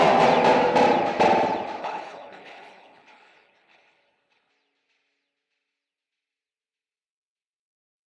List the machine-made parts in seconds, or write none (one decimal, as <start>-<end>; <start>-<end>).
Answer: 1.8-4.5